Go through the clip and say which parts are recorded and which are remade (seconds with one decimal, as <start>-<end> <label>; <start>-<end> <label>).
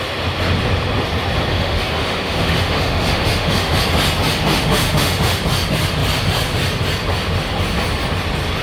0.0-1.5 recorded; 1.5-3.8 remade; 3.8-4.4 recorded; 4.4-5.4 remade; 5.4-8.6 recorded